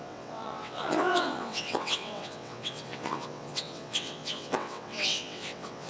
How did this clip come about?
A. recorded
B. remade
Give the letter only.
B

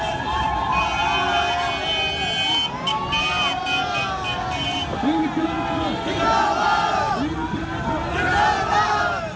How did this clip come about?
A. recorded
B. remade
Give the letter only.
A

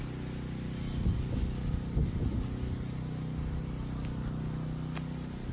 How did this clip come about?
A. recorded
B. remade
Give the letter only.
A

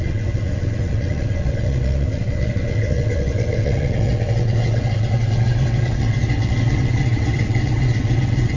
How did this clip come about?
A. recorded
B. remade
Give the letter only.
B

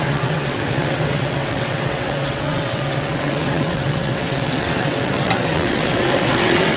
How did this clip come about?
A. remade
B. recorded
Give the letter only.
A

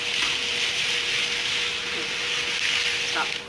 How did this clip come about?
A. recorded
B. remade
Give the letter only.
A